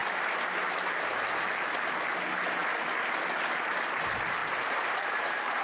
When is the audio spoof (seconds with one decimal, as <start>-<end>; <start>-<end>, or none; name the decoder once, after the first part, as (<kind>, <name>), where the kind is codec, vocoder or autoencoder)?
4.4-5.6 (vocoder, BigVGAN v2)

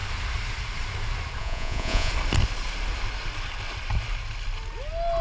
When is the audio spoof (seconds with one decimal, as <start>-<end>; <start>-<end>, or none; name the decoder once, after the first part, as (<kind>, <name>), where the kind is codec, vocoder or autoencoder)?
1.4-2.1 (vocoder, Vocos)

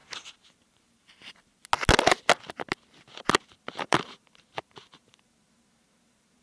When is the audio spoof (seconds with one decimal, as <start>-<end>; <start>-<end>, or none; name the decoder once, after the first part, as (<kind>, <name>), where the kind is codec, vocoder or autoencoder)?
0.0-1.5 (vocoder, BigVGAN v2); 3.4-6.4

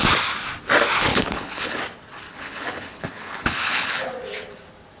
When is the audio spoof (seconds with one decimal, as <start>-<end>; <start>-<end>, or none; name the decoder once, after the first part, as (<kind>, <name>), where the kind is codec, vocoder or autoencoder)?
1.1-1.8 (codec, HILCodec); 2.3-4.1

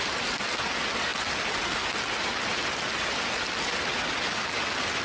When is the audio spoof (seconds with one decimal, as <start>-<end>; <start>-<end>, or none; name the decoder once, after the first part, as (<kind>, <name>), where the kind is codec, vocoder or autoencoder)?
none